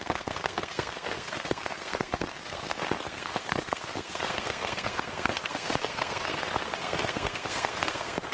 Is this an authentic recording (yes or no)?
no